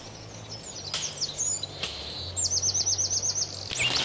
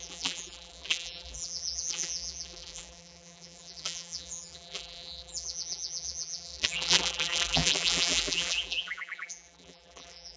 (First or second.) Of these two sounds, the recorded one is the first